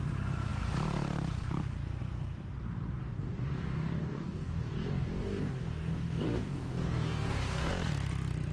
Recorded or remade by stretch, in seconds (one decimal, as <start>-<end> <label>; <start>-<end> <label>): 0.0-3.0 recorded; 3.0-7.7 remade; 7.7-8.5 recorded